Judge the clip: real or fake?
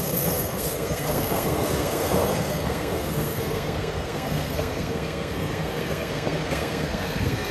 fake